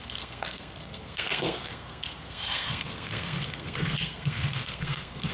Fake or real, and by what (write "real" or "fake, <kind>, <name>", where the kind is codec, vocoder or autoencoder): fake, codec, SNAC